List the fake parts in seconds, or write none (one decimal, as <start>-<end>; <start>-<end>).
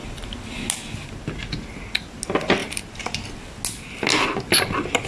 2.6-3.3